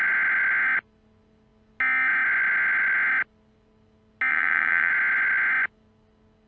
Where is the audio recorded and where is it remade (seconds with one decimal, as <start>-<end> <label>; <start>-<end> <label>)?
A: 0.0-4.3 recorded; 4.3-4.9 remade; 4.9-6.5 recorded